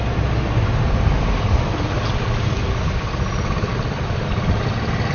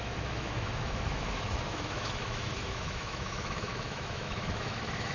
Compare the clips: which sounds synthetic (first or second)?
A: second